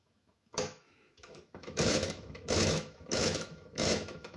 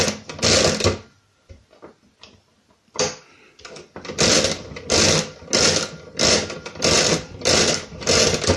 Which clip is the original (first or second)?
second